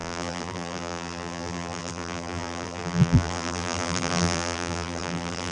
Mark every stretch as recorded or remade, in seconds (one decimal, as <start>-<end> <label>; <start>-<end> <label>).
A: 0.0-5.5 remade

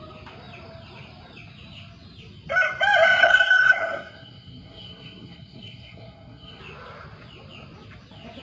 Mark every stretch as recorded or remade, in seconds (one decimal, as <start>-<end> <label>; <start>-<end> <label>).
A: 0.0-3.2 recorded; 3.2-6.6 remade; 6.6-8.4 recorded

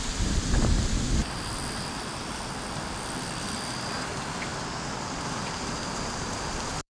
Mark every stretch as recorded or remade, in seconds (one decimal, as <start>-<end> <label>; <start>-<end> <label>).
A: 0.0-4.5 remade; 4.5-5.8 recorded; 5.8-6.9 remade

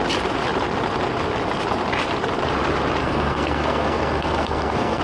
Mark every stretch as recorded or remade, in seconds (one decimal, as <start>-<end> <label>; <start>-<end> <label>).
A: 0.0-3.0 recorded; 3.0-5.0 remade

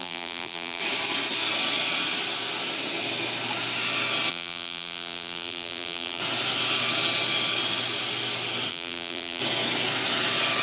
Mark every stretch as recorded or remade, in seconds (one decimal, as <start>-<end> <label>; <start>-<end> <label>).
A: 0.0-0.8 remade; 0.8-4.3 recorded; 4.3-6.2 remade; 6.2-8.7 recorded; 8.7-9.4 remade; 9.4-10.6 recorded

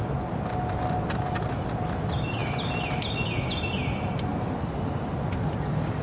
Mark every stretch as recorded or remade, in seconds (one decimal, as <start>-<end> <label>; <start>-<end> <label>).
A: 0.0-6.0 recorded

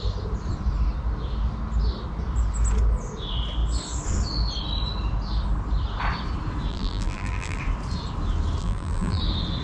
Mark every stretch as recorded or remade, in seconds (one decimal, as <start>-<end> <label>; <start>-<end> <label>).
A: 0.0-6.7 recorded; 6.7-7.6 remade; 7.6-8.6 recorded; 8.6-9.2 remade; 9.2-9.6 recorded

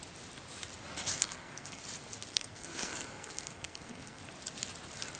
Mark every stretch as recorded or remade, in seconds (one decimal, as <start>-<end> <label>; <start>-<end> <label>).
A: 0.0-1.1 recorded; 1.1-1.8 remade; 1.8-2.3 recorded; 2.3-4.2 remade; 4.2-5.2 recorded